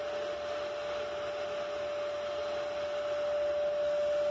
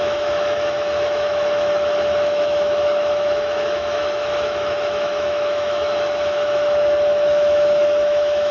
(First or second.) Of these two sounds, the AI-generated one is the second